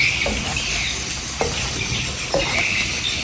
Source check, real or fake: real